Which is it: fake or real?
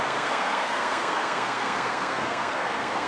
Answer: fake